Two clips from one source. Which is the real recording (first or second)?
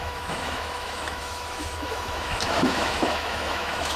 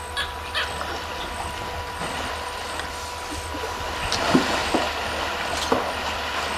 second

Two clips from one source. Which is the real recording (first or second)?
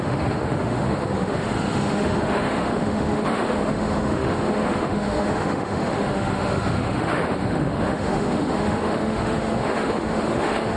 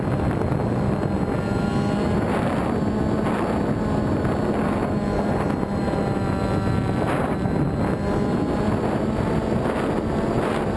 second